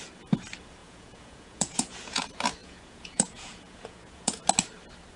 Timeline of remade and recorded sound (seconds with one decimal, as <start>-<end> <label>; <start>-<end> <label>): 0.0-0.8 recorded; 0.8-2.2 remade; 2.2-2.6 recorded; 2.6-4.4 remade; 4.4-5.2 recorded